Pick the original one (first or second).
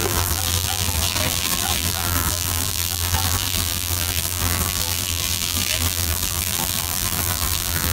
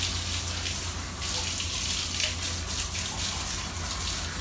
second